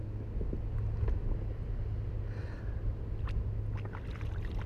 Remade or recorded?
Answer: recorded